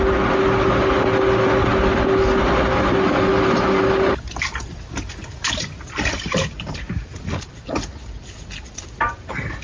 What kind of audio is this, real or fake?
real